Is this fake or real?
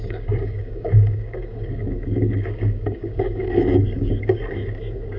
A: fake